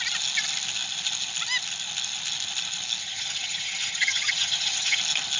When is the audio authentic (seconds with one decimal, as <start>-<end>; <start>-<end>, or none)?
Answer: 0.0-3.0; 5.0-5.4